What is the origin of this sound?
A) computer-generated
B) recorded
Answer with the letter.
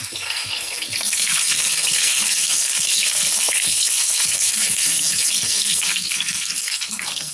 A